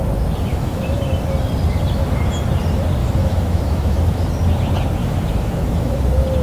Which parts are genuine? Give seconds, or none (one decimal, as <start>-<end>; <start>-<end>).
0.0-0.5; 1.0-3.0; 4.3-5.0; 6.0-6.4

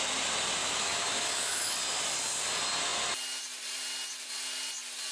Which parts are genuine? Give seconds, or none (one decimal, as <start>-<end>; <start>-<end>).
0.0-0.6; 1.7-5.1

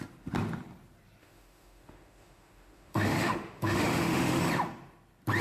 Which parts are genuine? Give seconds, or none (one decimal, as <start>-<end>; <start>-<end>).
0.0-1.2; 4.4-5.4

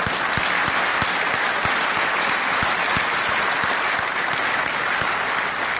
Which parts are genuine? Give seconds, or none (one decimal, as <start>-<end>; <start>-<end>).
0.0-5.8

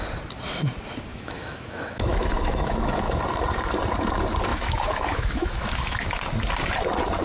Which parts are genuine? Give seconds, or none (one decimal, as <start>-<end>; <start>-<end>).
0.0-1.1; 3.2-4.5; 6.2-7.2

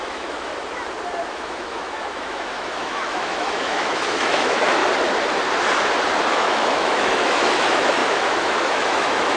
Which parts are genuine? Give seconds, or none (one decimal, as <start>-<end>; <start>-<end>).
0.5-1.3; 4.8-6.3